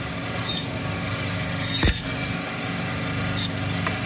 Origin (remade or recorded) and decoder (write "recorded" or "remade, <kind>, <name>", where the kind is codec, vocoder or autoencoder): recorded